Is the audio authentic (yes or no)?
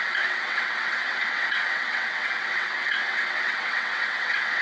no